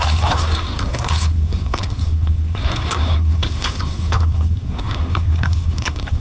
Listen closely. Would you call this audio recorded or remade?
remade